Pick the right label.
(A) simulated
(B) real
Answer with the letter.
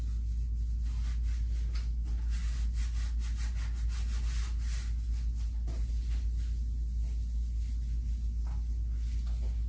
B